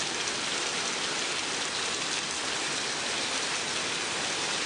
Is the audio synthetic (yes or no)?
no